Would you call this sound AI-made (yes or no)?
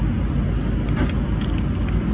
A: no